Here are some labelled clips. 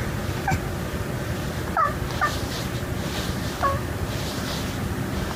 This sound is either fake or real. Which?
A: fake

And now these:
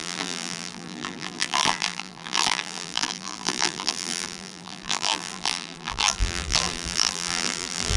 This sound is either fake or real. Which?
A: fake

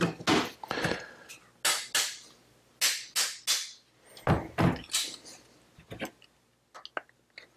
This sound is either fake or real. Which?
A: real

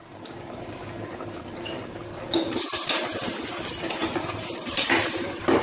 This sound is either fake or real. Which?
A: fake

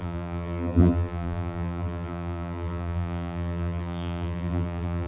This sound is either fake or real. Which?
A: fake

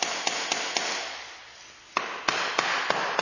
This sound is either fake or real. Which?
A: real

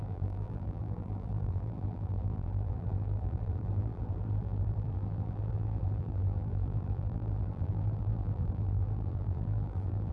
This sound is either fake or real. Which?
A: fake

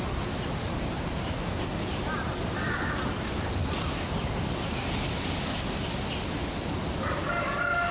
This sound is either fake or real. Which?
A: real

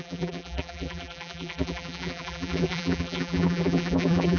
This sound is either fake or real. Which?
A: fake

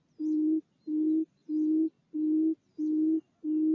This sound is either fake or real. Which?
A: real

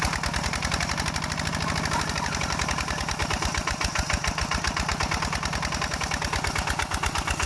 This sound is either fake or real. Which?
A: real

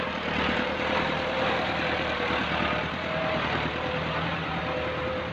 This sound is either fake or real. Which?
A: fake